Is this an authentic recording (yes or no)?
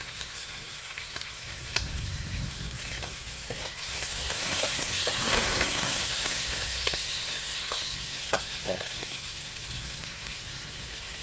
no